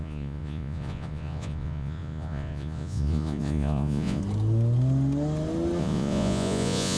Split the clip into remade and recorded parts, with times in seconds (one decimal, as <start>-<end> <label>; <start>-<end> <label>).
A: 0.0-4.2 remade; 4.2-5.8 recorded; 5.8-7.0 remade